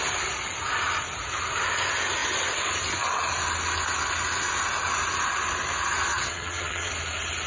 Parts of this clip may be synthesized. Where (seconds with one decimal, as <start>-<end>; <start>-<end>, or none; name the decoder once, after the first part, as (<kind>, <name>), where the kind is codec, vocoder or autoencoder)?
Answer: 6.1-6.9 (vocoder, WaveNeXt)